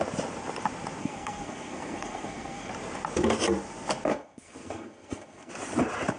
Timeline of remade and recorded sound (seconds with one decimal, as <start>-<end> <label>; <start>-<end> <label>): 0.0-1.0 recorded; 1.0-2.7 remade; 2.7-4.1 recorded; 4.1-5.5 remade; 5.5-6.2 recorded